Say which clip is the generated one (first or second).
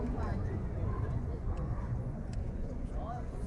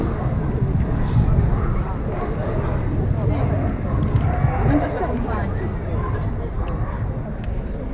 first